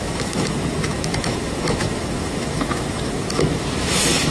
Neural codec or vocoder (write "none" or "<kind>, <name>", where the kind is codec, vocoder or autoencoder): autoencoder, DAC-VAE